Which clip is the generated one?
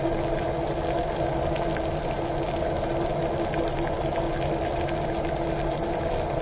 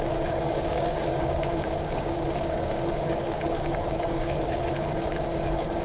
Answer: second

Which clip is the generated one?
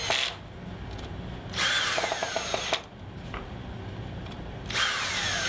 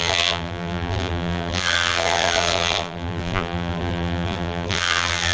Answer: second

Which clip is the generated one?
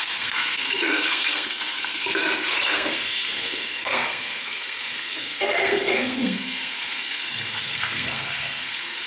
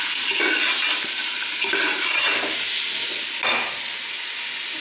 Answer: first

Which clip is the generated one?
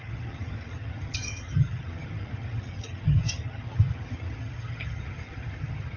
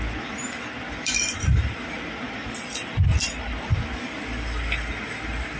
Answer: first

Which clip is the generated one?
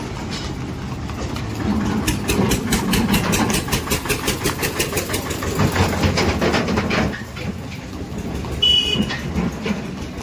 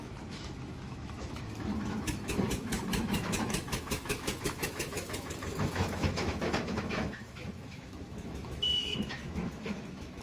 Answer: second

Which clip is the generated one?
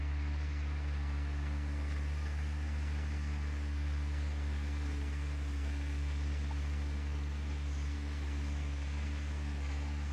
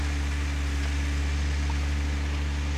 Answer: first